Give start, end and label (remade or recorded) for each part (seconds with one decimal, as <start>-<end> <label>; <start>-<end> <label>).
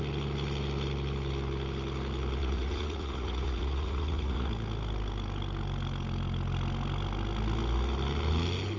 0.0-2.4 recorded; 2.4-4.5 remade; 4.5-8.8 recorded